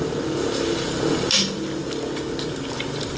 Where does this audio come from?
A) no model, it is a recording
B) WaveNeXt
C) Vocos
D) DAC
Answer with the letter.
A